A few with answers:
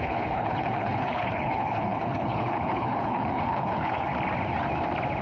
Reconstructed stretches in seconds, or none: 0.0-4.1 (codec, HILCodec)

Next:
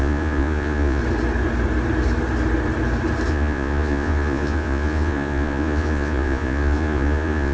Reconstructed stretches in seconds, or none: 0.0-1.0 (vocoder, Vocos); 3.3-7.5

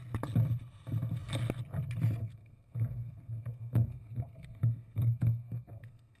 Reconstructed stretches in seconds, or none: 2.2-6.2 (codec, SNAC)

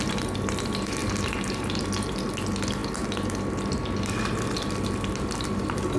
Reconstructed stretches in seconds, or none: none

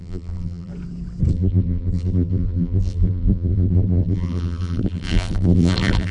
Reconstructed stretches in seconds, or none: 0.0-0.7 (vocoder, BigVGAN v2); 1.3-6.1

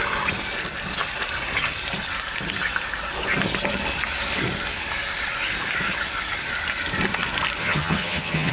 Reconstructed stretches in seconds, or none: 7.6-8.5 (vocoder, HiFi-GAN)

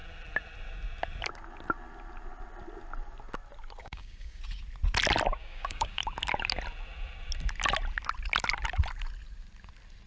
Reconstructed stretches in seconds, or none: 3.8-4.4 (codec, DAC); 5.4-6.0